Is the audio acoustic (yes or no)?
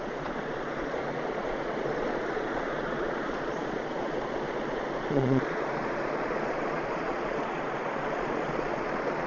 no